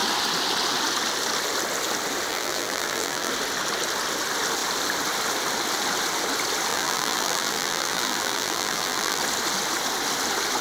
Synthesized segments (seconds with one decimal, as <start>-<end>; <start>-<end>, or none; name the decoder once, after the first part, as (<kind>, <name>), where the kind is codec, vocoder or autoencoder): 2.3-3.3 (vocoder, BigVGAN v2); 6.7-9.2

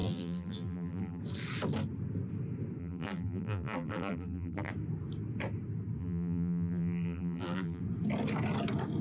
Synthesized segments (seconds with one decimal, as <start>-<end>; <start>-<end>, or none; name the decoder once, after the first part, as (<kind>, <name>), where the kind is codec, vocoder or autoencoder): 0.0-1.2 (vocoder, BigVGAN v2); 2.8-4.7; 6.0-7.8

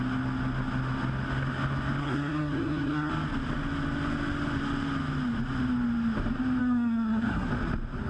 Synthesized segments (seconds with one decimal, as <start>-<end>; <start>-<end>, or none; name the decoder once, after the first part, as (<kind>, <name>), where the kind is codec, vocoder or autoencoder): 2.0-3.1 (codec, SNAC); 6.6-7.5

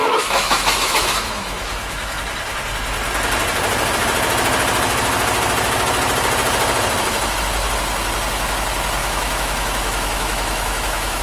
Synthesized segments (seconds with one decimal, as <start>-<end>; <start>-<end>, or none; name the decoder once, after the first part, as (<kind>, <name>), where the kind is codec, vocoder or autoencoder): 0.0-2.2 (autoencoder, DAC-VAE); 9.0-11.2

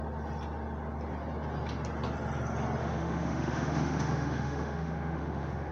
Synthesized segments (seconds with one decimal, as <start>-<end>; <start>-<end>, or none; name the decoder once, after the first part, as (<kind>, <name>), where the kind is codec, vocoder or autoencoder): 2.8-5.7 (autoencoder, DAC-VAE)